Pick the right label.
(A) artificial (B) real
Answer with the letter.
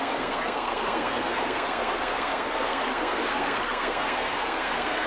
A